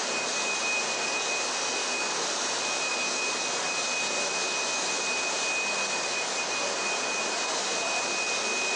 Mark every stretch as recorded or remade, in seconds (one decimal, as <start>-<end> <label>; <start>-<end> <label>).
0.0-8.8 recorded